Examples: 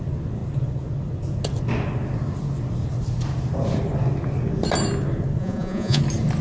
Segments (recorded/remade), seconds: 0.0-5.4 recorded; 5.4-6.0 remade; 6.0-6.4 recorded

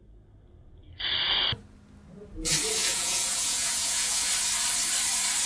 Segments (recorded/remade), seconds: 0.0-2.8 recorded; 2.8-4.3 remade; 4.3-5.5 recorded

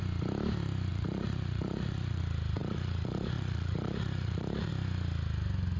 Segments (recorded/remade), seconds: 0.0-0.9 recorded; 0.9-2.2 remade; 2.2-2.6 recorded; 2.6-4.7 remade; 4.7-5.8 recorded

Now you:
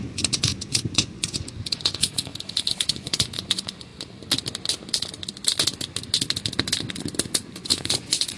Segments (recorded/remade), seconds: 0.0-2.3 remade; 2.3-2.8 recorded; 2.8-3.9 remade; 3.9-7.2 recorded; 7.2-8.4 remade